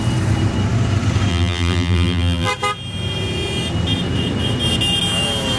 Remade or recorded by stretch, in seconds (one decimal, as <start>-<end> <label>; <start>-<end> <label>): 0.0-1.3 recorded; 1.3-2.5 remade; 2.5-5.6 recorded